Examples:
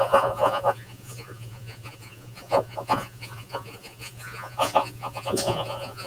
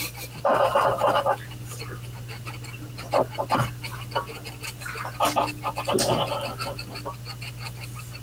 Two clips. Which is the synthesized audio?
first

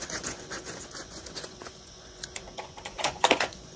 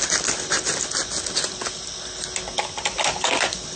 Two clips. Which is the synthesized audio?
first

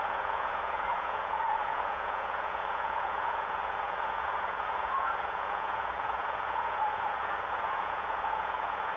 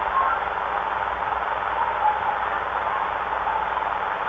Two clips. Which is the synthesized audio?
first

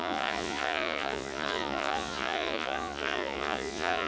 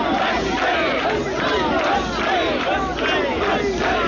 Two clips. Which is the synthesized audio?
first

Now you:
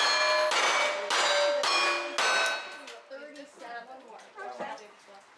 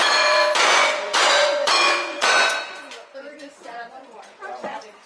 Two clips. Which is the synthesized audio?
second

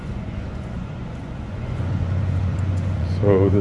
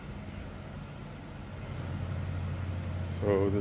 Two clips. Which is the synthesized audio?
first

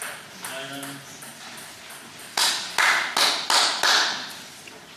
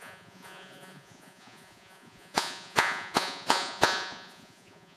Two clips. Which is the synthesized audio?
second